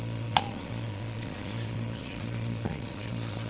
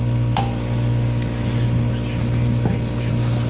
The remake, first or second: first